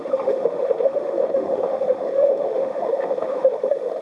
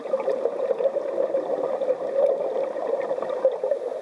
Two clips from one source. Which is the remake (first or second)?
first